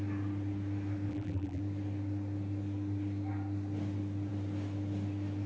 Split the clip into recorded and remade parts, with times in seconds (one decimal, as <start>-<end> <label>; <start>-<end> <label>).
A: 0.0-1.1 recorded; 1.1-1.6 remade; 1.6-5.5 recorded

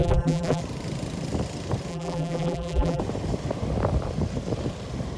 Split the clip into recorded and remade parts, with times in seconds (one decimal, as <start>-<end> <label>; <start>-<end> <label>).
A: 0.0-0.6 remade; 0.6-1.9 recorded; 1.9-3.0 remade; 3.0-5.2 recorded

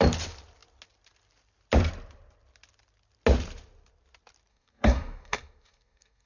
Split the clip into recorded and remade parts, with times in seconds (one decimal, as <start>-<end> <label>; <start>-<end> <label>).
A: 0.0-4.5 recorded; 4.5-6.3 remade

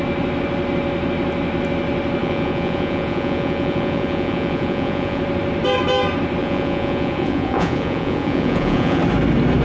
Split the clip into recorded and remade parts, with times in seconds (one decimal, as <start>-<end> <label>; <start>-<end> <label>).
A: 0.0-2.2 recorded; 2.2-5.2 remade; 5.2-6.4 recorded; 6.4-9.0 remade; 9.0-9.6 recorded

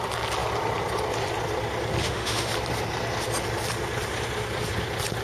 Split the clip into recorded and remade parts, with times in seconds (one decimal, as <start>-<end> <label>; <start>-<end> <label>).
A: 0.0-2.0 recorded; 2.0-2.5 remade; 2.5-5.2 recorded